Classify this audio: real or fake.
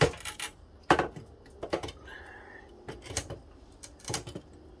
fake